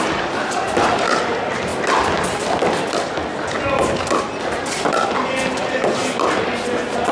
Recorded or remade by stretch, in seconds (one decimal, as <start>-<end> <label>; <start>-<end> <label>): 0.0-7.1 recorded